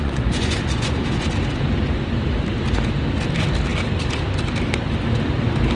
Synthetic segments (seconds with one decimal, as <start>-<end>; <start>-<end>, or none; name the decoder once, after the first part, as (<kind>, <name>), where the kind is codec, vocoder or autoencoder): 0.0-1.3 (vocoder, Vocos)